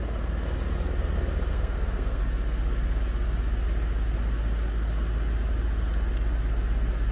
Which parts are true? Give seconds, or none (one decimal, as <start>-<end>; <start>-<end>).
0.0-1.5; 2.2-7.1